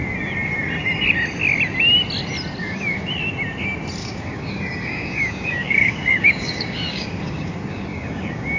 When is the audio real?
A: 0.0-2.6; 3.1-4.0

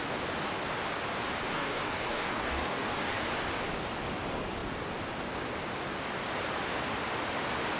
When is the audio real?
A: 0.0-1.5; 3.2-7.8